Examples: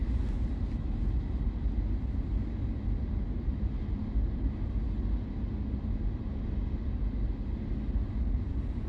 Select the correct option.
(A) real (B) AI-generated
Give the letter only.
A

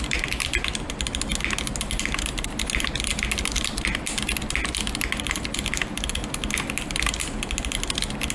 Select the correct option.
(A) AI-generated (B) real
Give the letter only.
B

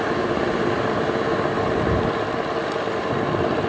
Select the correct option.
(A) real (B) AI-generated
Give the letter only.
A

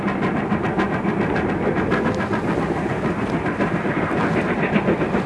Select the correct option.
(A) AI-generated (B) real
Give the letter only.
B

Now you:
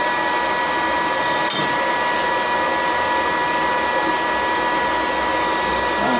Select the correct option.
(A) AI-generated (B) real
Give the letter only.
B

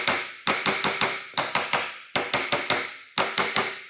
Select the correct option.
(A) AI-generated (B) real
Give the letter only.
B